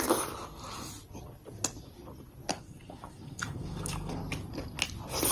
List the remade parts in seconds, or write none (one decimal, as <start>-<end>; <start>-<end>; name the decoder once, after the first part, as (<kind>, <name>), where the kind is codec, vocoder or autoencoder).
2.5-4.2 (codec, SNAC)